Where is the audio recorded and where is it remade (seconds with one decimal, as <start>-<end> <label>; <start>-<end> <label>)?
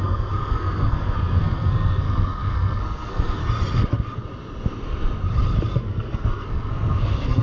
0.0-3.4 remade; 3.4-5.8 recorded; 5.8-7.4 remade